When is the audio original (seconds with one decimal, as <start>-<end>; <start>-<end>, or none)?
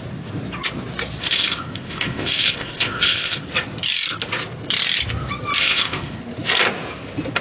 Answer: 0.0-1.2; 3.4-5.6; 6.2-7.4